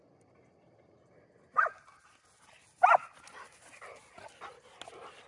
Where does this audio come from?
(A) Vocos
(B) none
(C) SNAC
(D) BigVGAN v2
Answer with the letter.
B